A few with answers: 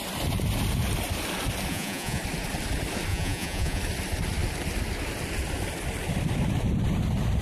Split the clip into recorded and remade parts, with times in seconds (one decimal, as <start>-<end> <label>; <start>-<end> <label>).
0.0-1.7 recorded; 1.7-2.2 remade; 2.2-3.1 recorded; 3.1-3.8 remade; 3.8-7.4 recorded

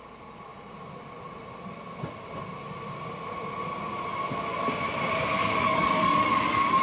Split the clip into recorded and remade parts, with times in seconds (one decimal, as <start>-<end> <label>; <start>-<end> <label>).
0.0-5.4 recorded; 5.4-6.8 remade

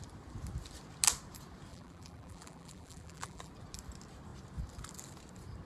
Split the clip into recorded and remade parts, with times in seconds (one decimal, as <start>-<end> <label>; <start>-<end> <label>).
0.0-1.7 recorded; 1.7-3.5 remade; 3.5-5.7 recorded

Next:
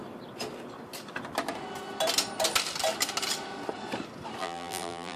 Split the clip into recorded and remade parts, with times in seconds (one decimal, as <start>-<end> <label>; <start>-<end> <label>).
0.0-4.4 recorded; 4.4-5.2 remade

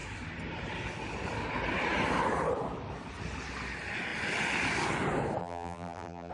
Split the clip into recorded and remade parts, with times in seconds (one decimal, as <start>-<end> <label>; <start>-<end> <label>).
0.0-5.4 recorded; 5.4-6.3 remade

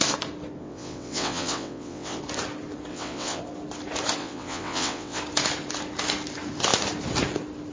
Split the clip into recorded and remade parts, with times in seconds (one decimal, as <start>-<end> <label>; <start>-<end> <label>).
0.0-0.6 recorded; 0.6-2.2 remade; 2.2-2.9 recorded; 2.9-3.4 remade; 3.4-4.2 recorded; 4.2-5.2 remade; 5.2-7.7 recorded

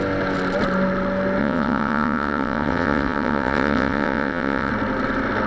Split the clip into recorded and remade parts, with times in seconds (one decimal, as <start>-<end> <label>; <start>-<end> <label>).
0.0-1.4 recorded; 1.4-4.7 remade; 4.7-5.5 recorded

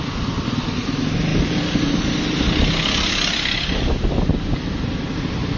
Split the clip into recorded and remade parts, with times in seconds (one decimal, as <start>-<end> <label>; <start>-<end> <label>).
0.0-5.6 recorded